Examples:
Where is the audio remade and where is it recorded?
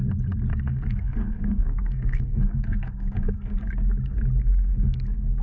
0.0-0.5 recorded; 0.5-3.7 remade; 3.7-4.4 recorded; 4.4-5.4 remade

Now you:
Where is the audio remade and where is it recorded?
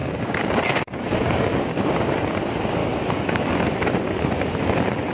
0.0-2.2 remade; 2.2-2.8 recorded; 2.8-3.4 remade; 3.4-5.1 recorded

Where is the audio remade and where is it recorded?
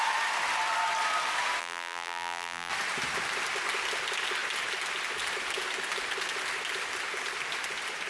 0.0-1.6 recorded; 1.6-2.7 remade; 2.7-8.1 recorded